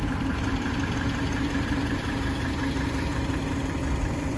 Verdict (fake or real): real